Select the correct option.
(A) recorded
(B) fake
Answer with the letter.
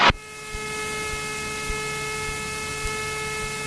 A